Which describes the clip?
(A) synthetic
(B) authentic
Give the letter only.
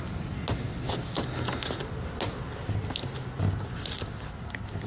B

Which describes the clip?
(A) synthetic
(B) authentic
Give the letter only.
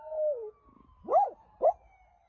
B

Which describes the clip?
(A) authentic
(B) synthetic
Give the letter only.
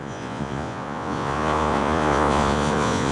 B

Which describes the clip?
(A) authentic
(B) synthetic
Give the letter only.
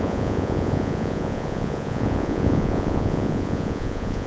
B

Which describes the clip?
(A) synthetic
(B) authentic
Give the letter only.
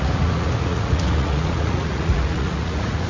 A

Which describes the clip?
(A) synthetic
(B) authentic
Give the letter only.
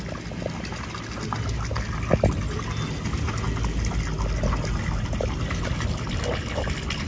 B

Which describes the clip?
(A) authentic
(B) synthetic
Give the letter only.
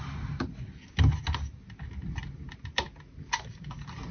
A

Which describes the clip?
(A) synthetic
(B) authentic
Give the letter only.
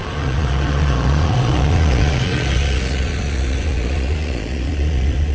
A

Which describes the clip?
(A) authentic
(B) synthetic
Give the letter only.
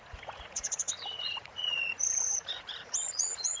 B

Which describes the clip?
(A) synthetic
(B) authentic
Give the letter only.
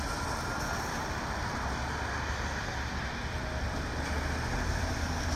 B